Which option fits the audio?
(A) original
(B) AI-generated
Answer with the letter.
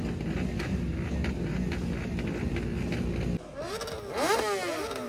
A